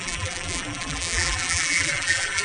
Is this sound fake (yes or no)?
yes